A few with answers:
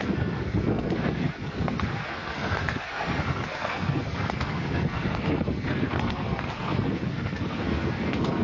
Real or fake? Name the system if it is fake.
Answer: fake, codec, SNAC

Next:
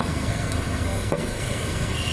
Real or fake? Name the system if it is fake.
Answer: fake, codec, SNAC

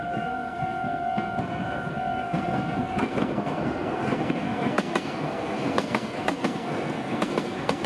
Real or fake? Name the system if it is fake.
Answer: fake, codec, SNAC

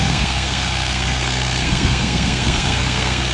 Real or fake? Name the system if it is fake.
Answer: fake, codec, SNAC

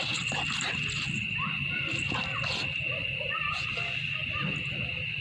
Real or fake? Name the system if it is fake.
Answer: real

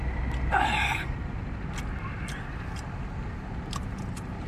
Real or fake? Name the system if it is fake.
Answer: real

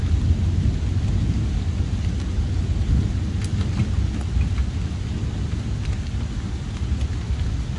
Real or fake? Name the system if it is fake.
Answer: real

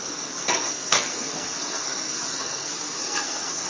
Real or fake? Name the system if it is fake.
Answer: fake, codec, SNAC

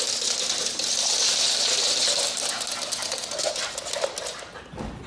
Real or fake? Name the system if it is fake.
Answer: real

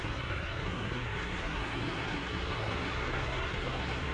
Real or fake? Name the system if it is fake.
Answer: fake, codec, SNAC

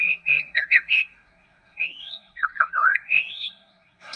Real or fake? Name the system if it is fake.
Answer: fake, codec, SNAC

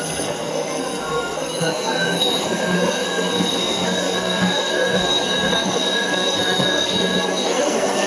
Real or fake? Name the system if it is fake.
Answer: fake, codec, SNAC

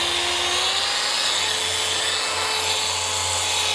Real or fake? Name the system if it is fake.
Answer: real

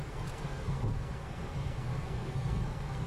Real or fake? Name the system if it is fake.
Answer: fake, codec, SNAC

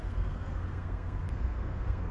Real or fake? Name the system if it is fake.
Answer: fake, codec, SNAC